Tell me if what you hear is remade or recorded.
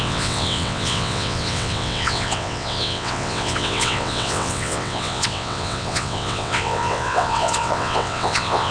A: remade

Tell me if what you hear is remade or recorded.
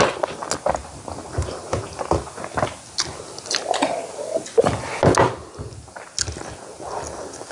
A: recorded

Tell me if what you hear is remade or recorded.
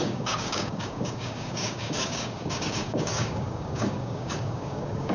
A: remade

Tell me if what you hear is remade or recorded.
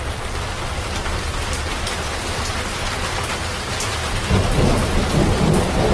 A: recorded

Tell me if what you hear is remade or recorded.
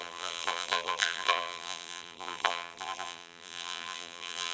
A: remade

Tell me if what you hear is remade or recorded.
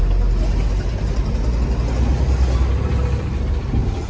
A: recorded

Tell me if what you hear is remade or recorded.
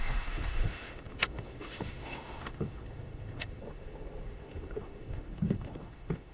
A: remade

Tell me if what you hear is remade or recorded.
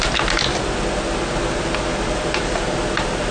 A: recorded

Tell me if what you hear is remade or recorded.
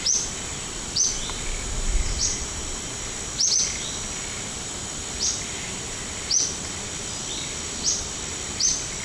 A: recorded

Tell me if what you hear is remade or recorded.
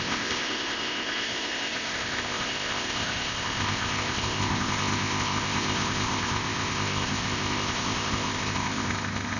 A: remade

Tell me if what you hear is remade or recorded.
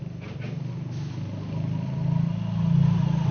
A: recorded